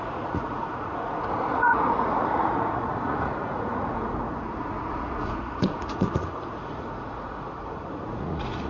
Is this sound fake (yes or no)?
yes